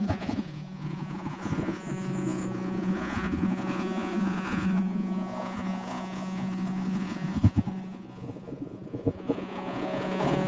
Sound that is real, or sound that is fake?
fake